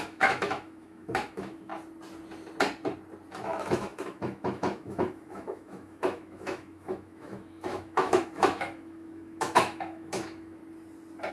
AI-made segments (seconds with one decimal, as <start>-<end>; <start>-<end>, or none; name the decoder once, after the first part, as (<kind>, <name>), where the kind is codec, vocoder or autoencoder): 0.0-1.7 (autoencoder, DAC-VAE); 3.3-10.6